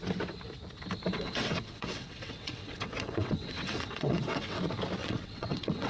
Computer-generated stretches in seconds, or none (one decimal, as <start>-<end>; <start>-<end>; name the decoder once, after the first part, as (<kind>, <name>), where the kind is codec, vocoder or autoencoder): 1.1-4.6 (vocoder, WaveNeXt); 5.0-5.9